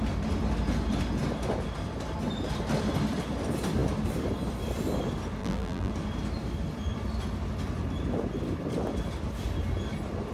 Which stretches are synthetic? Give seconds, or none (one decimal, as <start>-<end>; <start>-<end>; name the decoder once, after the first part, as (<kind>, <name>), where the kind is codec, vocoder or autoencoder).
5.4-5.9 (vocoder, BigVGAN v2)